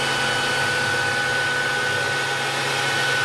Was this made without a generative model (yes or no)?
yes